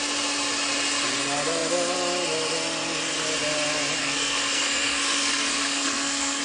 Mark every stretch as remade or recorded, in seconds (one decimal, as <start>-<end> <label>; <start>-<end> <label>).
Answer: 0.0-4.0 recorded; 4.0-6.4 remade